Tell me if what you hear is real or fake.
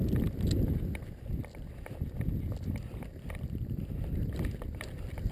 fake